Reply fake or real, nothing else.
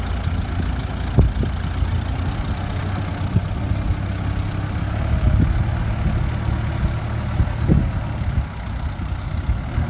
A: real